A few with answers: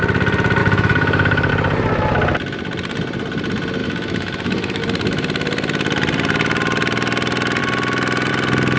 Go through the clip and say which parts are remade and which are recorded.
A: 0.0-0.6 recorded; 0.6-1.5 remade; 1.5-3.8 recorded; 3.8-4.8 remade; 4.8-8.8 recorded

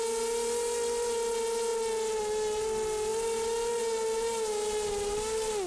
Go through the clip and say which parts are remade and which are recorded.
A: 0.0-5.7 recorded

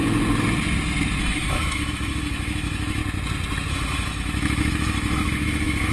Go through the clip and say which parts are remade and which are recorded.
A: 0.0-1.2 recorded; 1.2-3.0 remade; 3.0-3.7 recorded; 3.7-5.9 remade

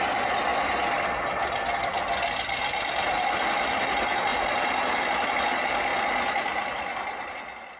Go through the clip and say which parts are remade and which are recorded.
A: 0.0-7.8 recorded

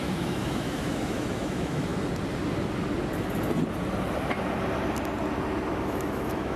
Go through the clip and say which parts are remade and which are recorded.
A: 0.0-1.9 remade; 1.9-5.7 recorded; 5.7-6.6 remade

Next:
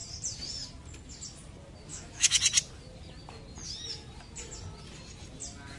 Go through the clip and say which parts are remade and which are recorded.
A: 0.0-1.9 recorded; 1.9-2.4 remade; 2.4-5.8 recorded